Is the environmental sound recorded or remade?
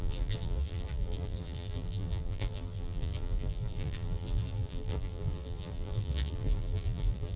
remade